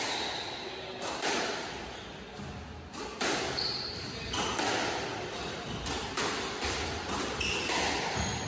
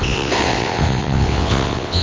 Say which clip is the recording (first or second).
first